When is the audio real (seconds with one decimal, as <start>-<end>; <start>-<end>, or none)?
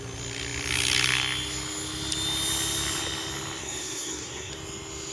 0.0-3.6; 4.5-5.1